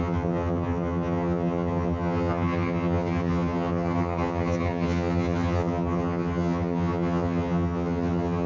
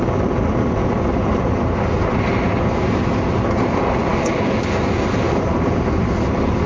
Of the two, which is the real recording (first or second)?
second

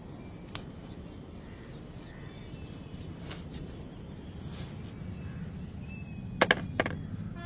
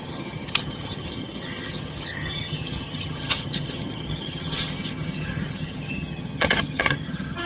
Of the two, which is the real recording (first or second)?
first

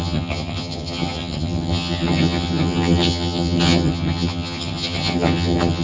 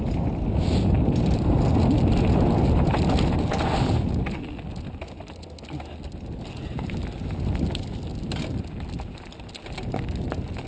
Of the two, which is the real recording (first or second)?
second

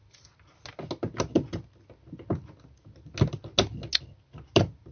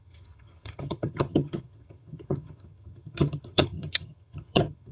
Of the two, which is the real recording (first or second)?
first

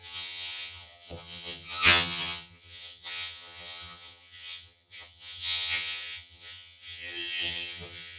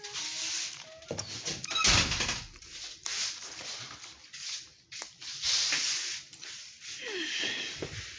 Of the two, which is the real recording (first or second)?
second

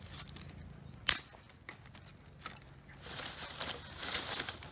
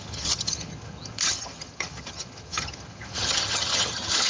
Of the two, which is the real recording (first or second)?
first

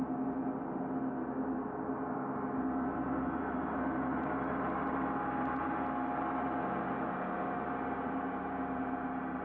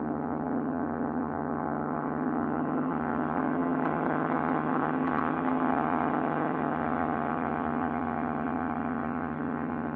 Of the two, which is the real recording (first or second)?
first